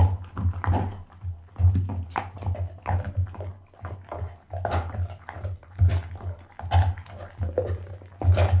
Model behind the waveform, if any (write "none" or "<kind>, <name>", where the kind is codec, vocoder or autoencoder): none